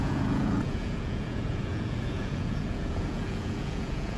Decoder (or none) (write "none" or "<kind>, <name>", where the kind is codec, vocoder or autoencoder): vocoder, Vocos